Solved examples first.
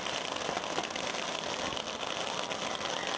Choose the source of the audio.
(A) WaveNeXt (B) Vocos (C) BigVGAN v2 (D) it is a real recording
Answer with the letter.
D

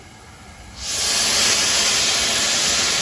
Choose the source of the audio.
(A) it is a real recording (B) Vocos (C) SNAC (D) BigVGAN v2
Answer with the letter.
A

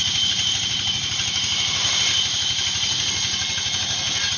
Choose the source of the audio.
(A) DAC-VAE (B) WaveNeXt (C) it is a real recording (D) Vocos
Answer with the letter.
C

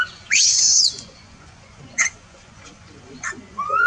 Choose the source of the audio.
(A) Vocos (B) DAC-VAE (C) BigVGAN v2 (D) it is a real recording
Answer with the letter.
A